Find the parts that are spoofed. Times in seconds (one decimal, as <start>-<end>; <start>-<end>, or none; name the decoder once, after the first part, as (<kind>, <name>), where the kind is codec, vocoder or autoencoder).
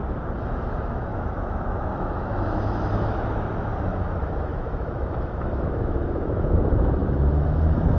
0.0-8.0 (autoencoder, DAC-VAE)